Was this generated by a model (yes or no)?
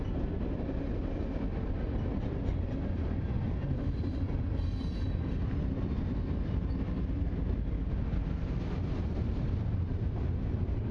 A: no